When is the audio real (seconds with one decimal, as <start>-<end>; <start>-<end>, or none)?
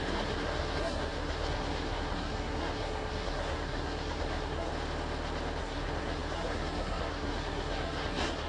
4.7-5.6